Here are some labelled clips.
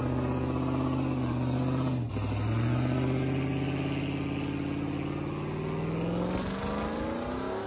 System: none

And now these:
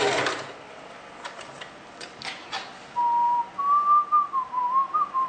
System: none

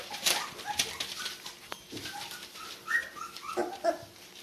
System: none